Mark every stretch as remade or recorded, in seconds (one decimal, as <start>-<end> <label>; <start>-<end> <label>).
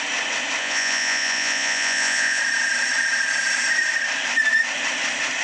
0.0-0.6 recorded; 0.6-2.4 remade; 2.4-5.4 recorded